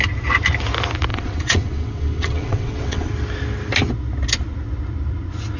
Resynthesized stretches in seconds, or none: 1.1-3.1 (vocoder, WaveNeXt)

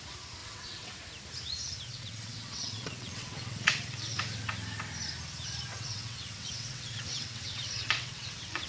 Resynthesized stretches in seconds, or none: 0.4-1.0 (vocoder, WaveNeXt); 1.9-4.2; 5.7-8.7

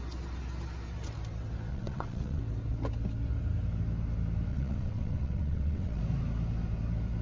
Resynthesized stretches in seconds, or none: 1.7-2.4 (vocoder, WaveNeXt); 4.5-6.0

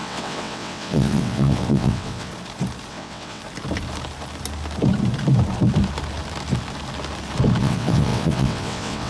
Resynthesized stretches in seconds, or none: 0.0-2.3 (vocoder, WaveNeXt); 2.9-3.4; 7.6-9.1

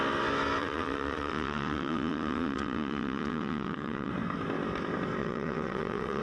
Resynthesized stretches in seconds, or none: 0.6-4.1 (vocoder, WaveNeXt); 5.2-6.2

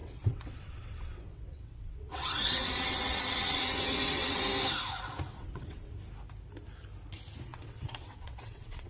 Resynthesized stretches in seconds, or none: 0.0-4.4 (vocoder, WaveNeXt); 5.3-5.9; 7.5-8.9

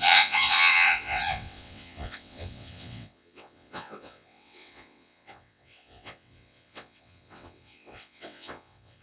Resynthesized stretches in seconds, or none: 0.0-9.0 (vocoder, WaveNeXt)

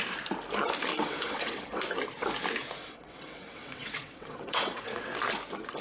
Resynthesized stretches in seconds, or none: 0.9-1.8 (vocoder, WaveNeXt); 2.8-5.1